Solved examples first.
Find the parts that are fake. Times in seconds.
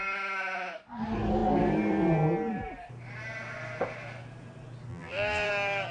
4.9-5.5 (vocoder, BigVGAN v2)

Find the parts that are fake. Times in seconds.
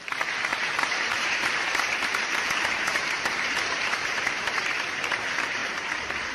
0.5-4.3 (vocoder, BigVGAN v2); 5.6-6.3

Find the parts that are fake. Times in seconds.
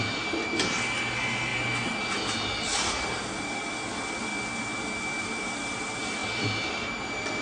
0.0-4.3 (vocoder, BigVGAN v2); 5.2-6.2; 6.7-7.4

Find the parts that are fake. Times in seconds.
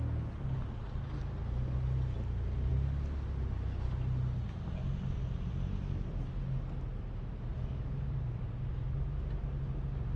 7.5-8.6 (vocoder, BigVGAN v2)